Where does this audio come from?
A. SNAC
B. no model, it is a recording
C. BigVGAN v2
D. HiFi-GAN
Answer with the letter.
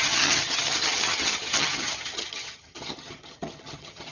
D